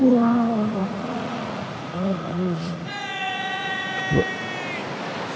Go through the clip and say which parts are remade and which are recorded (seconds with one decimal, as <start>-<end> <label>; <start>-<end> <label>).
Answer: 0.0-0.8 recorded; 0.8-4.0 remade; 4.0-5.4 recorded